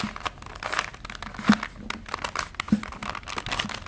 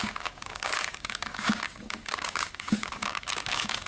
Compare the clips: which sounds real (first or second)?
first